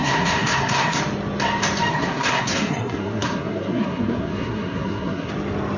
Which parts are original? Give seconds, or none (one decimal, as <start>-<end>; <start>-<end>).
1.0-1.9; 5.3-5.8